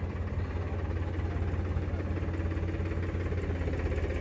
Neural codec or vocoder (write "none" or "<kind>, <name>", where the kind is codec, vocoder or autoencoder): none